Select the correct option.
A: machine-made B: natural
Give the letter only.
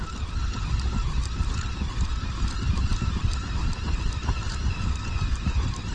B